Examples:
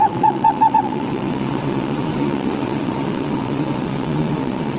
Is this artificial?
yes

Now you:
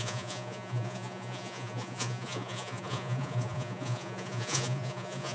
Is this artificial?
yes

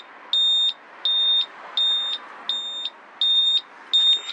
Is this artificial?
no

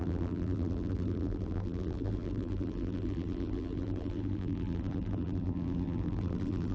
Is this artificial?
yes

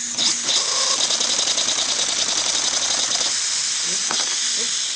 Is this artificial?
no